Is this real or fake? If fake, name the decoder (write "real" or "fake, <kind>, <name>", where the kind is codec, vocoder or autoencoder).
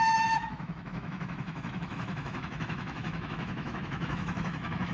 fake, autoencoder, DAC-VAE